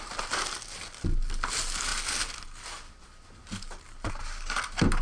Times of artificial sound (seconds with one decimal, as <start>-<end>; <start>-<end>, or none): none